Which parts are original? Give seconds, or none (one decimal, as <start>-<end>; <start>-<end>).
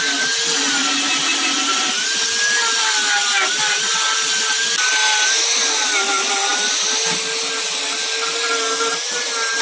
0.0-9.6